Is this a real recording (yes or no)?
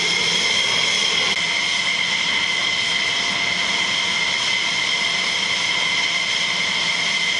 yes